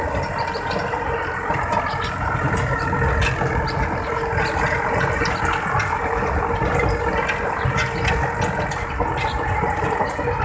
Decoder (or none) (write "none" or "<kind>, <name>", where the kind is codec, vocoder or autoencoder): none